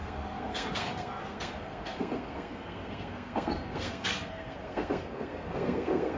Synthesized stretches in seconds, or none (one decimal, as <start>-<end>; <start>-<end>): 0.0-6.2

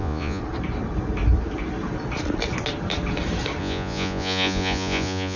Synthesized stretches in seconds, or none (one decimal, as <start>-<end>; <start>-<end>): 0.0-0.4; 3.6-5.4

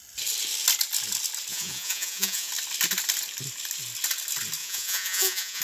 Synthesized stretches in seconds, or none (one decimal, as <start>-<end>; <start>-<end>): 1.5-2.5; 4.6-5.6

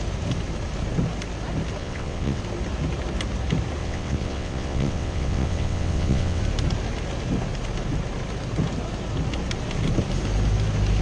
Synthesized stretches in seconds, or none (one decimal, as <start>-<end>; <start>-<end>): 1.8-2.4; 3.8-6.4

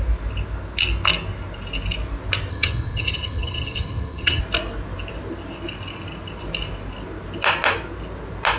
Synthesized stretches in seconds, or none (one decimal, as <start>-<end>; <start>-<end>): 2.5-4.4